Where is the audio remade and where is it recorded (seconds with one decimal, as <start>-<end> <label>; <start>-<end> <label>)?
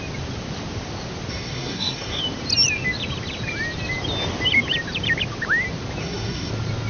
0.0-1.3 recorded; 1.3-2.2 remade; 2.2-6.0 recorded; 6.0-6.5 remade; 6.5-6.9 recorded